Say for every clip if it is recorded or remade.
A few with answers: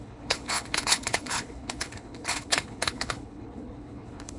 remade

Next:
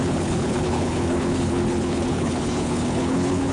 remade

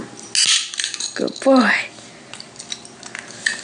recorded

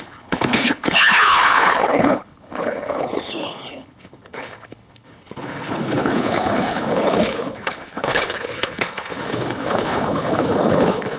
remade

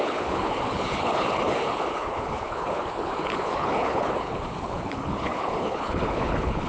remade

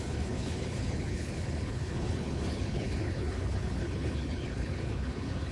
remade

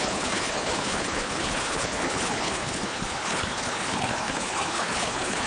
remade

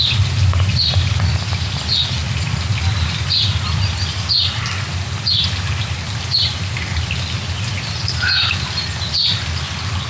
recorded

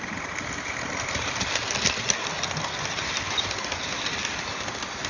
recorded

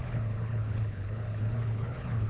remade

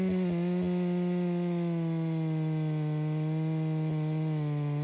recorded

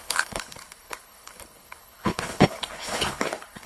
remade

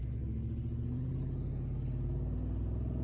recorded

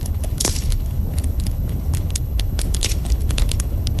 remade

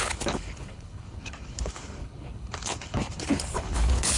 remade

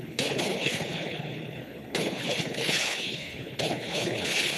remade